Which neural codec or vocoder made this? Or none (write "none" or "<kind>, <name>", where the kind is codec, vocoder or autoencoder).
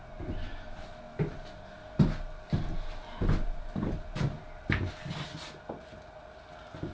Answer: none